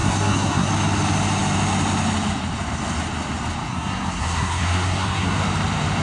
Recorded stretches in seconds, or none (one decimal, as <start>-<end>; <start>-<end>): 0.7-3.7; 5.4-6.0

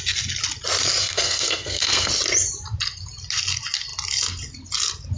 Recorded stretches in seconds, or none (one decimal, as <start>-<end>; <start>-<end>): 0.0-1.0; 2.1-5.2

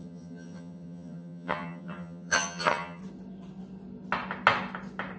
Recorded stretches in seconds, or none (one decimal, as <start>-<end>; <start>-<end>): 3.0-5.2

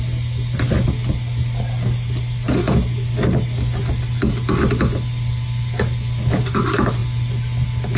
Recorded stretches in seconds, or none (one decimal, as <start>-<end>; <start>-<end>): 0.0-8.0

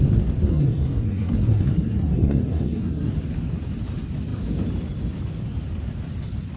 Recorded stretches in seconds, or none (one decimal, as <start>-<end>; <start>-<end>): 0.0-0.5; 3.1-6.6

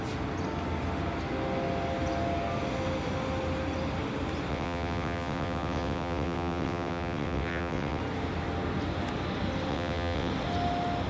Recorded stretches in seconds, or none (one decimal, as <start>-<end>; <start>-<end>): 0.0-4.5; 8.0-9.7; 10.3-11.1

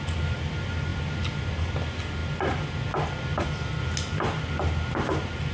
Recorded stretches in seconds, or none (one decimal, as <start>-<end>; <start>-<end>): 0.0-5.5